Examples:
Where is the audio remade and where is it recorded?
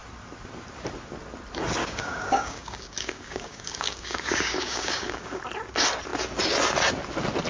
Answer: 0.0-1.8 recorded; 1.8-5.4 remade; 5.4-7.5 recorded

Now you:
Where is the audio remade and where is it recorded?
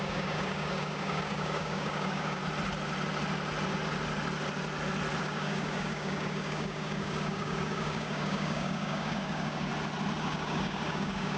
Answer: 0.0-2.4 remade; 2.4-5.2 recorded; 5.2-9.7 remade; 9.7-10.2 recorded; 10.2-11.4 remade